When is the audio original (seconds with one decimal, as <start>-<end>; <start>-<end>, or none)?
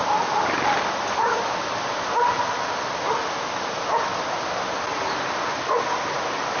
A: 0.0-6.6